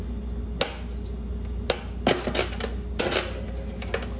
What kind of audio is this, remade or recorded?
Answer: recorded